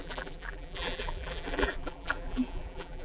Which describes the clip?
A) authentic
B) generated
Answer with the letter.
B